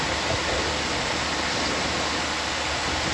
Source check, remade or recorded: recorded